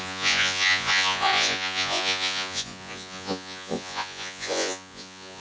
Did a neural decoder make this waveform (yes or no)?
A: yes